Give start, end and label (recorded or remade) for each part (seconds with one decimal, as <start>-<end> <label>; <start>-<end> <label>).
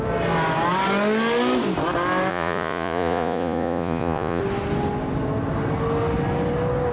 0.0-2.3 recorded; 2.3-4.4 remade; 4.4-6.9 recorded